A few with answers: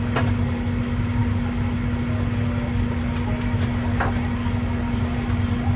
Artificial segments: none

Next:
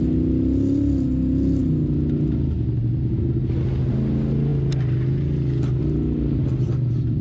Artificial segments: none

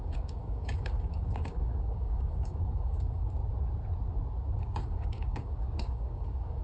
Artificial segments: 0.0-3.4 (codec, DAC); 4.6-6.6

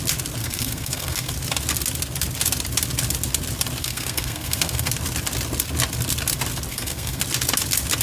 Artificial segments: 0.4-1.3 (codec, SNAC); 3.8-4.9; 6.7-7.2